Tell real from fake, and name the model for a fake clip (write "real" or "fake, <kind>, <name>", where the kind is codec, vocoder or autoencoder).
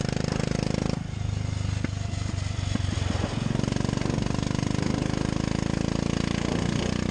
real